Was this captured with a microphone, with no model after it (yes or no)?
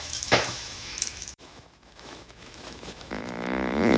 no